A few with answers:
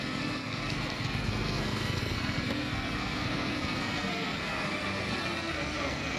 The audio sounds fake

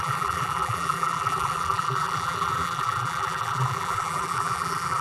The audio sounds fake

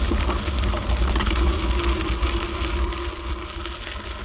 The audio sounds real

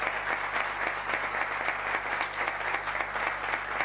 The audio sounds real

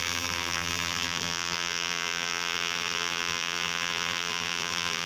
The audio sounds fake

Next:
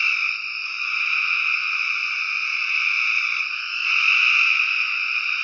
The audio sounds fake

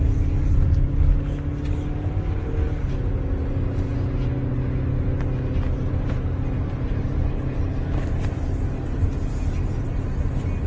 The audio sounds real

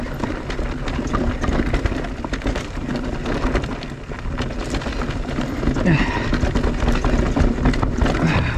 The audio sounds real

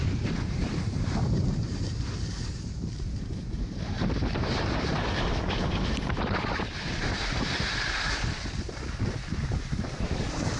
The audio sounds fake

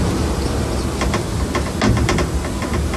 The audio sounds real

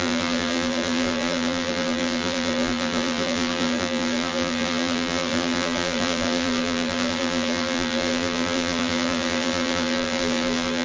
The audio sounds fake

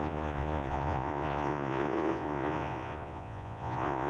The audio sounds fake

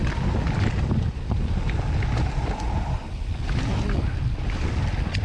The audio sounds real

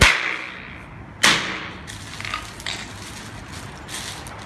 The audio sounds real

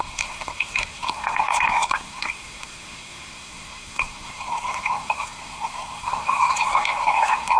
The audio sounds fake